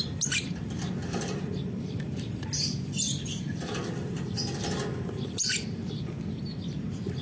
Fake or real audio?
real